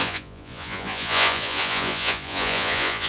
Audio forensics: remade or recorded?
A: remade